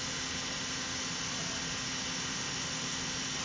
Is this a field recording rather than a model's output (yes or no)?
yes